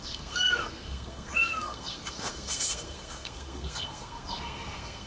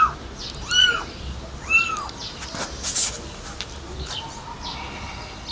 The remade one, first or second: first